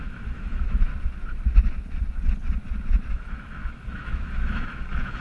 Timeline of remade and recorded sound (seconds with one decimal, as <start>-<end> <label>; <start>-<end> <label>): 0.0-0.9 remade; 0.9-3.1 recorded; 3.1-5.2 remade